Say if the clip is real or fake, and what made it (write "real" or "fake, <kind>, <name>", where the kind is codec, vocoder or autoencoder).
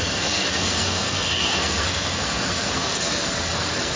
fake, codec, SNAC